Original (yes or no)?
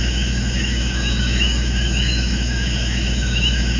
no